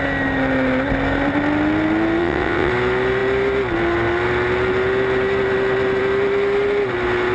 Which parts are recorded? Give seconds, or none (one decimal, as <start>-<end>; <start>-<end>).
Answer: 0.0-2.2; 2.7-7.3